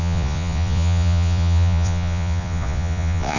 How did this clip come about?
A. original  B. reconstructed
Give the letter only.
B